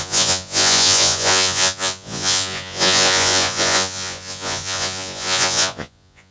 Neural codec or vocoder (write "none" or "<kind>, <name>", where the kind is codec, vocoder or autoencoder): vocoder, Vocos